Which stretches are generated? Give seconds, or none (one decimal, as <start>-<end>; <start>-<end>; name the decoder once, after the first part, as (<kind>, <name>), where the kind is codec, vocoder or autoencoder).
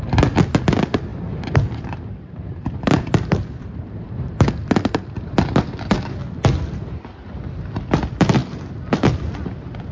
1.1-4.5 (vocoder, BigVGAN v2)